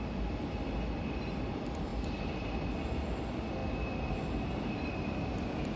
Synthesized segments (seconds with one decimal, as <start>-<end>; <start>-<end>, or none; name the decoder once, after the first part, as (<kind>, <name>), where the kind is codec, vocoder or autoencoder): none